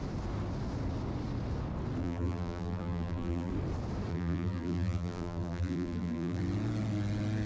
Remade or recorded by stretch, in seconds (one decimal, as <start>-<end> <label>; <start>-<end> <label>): 0.0-2.0 recorded; 2.0-3.5 remade; 3.5-4.1 recorded; 4.1-6.4 remade; 6.4-7.5 recorded